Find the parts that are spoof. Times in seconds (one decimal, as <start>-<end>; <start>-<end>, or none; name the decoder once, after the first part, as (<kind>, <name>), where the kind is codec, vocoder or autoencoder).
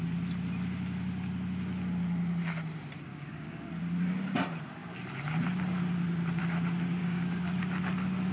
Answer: 3.1-3.7 (codec, DAC); 7.0-7.6